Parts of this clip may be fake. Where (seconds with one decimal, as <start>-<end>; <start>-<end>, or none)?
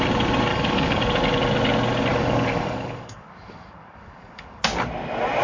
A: 0.5-1.0; 2.1-4.6